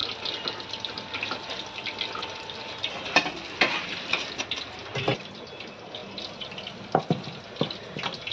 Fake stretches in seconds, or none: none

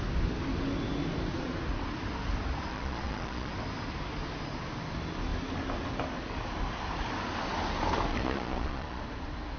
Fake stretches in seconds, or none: 2.7-3.5; 8.1-9.0

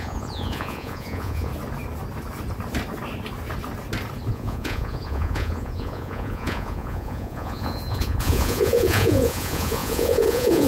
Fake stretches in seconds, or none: 0.0-1.5; 4.3-10.7

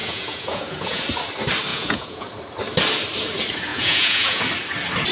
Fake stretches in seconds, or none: 0.0-1.0; 1.7-2.3; 3.7-4.4

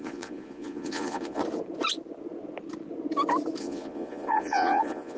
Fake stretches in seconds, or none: 0.0-1.4; 3.6-5.2